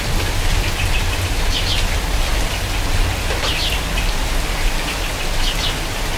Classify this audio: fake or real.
real